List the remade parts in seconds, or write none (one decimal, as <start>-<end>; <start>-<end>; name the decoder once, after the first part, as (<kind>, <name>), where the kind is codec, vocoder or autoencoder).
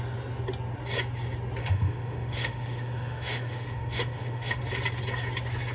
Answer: 1.6-4.6 (autoencoder, DAC-VAE)